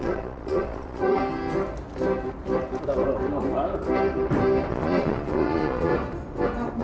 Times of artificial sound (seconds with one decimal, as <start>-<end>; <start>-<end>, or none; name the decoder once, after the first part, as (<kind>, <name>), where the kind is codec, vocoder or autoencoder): 0.0-1.2 (vocoder, Vocos); 4.7-5.9